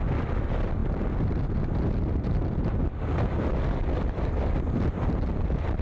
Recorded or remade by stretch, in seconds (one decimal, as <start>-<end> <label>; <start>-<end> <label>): 0.0-5.8 remade